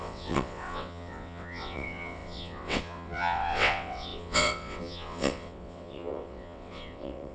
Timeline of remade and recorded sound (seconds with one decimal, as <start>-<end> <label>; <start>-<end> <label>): 0.0-7.3 remade